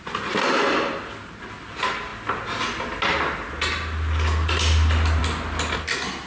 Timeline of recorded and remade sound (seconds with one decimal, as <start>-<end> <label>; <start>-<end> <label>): 0.0-6.3 recorded